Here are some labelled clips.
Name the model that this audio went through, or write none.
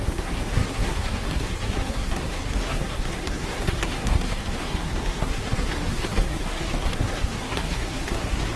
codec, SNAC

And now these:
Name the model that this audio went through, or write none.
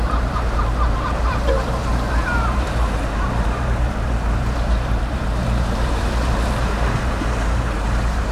vocoder, BigVGAN v2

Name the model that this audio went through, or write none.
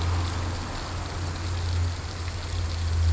none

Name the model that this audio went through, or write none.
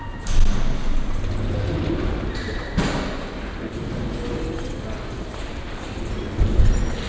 none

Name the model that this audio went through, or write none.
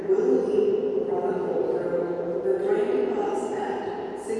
none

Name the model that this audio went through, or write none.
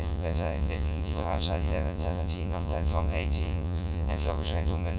vocoder, Vocos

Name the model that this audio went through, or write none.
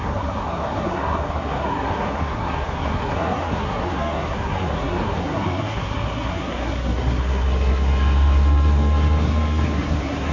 codec, SNAC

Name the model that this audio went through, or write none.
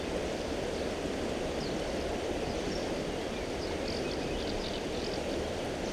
none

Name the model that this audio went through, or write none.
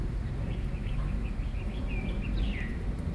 vocoder, BigVGAN v2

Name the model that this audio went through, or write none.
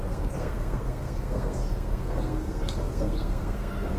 codec, SNAC